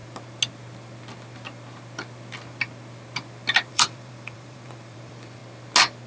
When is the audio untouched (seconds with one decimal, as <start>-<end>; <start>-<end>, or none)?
0.0-3.7; 5.4-6.1